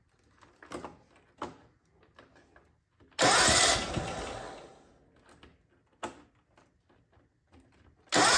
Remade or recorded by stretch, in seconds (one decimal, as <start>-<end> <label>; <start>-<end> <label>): 0.0-8.4 recorded

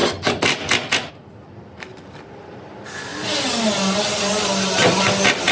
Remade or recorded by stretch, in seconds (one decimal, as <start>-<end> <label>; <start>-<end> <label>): 0.0-5.5 recorded

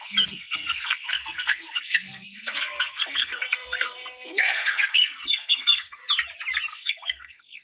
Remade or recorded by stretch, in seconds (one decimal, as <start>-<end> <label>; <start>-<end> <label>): 0.0-6.0 remade; 6.0-6.6 recorded; 6.6-7.6 remade

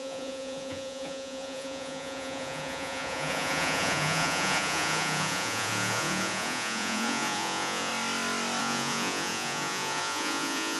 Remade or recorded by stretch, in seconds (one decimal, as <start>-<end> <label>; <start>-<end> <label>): 0.0-7.9 remade; 7.9-8.6 recorded; 8.6-10.8 remade

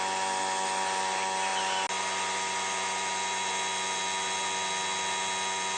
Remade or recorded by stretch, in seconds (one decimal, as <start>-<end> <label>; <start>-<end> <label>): 0.0-5.8 recorded

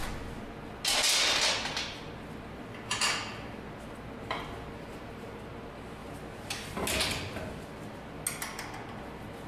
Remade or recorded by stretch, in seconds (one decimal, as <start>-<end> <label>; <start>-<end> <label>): 0.0-9.5 recorded